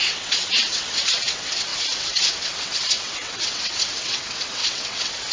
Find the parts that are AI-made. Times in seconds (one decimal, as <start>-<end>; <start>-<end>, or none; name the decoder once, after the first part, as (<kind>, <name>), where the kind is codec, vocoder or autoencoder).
0.0-5.3 (vocoder, WaveNeXt)